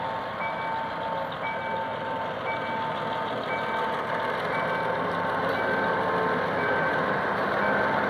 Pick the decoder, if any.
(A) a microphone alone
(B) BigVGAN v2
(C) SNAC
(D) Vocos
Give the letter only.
A